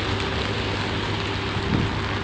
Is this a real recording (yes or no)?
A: yes